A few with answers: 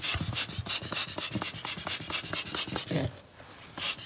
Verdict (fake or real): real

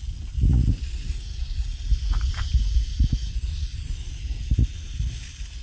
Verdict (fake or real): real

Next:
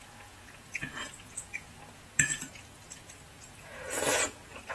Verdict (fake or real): fake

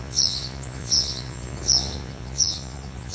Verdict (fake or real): fake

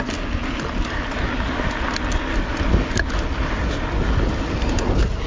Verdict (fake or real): real